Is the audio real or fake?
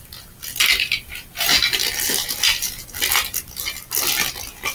real